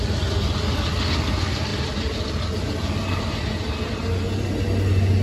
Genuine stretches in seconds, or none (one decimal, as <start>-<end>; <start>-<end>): 0.0-1.7; 3.2-5.2